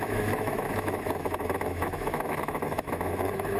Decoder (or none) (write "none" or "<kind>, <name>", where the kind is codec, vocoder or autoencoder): autoencoder, DAC-VAE